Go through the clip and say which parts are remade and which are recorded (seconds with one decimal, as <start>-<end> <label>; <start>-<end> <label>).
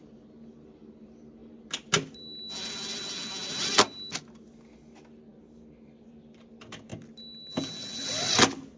0.0-8.8 recorded